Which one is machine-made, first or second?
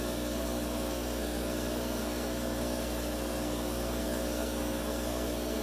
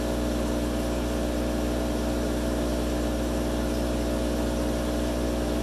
first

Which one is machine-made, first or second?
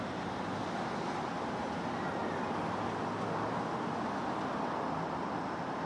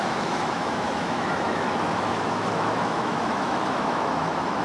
second